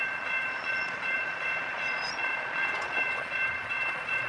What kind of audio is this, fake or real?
fake